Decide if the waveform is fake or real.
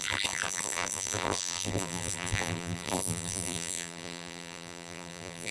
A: fake